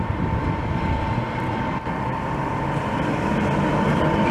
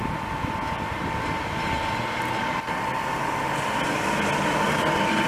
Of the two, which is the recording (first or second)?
second